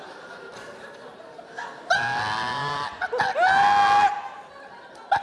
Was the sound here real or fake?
real